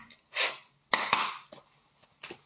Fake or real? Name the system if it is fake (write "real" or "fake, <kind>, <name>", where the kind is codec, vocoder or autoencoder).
real